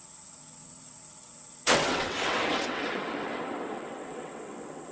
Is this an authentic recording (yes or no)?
no